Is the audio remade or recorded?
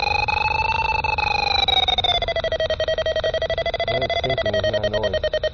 recorded